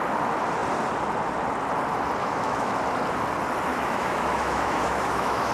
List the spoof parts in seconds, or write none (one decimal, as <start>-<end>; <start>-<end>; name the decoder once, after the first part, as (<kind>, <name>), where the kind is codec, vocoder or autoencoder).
2.2-2.8 (autoencoder, DAC-VAE); 3.7-5.5